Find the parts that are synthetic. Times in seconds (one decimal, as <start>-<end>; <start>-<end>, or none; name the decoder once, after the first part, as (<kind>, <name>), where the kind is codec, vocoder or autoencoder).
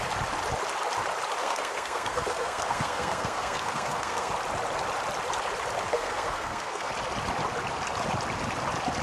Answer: 1.4-4.3 (codec, SNAC); 5.9-6.9